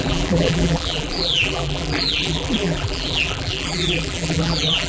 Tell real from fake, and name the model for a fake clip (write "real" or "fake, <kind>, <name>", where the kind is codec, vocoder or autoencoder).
fake, vocoder, BigVGAN v2